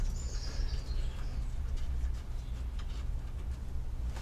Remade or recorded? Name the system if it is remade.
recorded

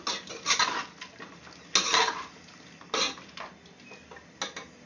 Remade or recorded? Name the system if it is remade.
recorded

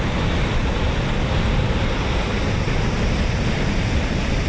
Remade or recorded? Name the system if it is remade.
recorded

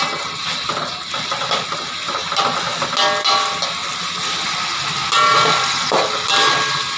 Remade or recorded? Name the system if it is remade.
recorded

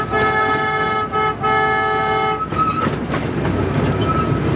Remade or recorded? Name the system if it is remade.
recorded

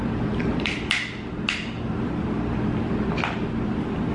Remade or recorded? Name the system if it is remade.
recorded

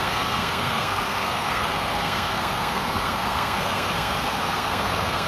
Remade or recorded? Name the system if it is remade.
remade, codec, SNAC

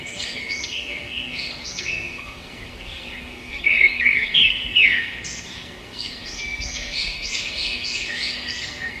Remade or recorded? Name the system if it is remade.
remade, codec, SNAC